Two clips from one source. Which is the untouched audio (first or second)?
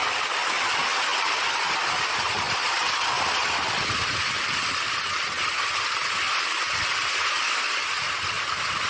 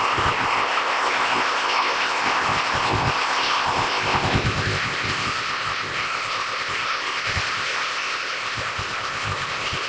first